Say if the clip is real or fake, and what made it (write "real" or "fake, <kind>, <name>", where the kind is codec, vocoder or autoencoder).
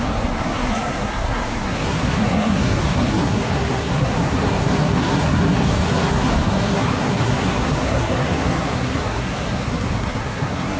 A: fake, codec, SNAC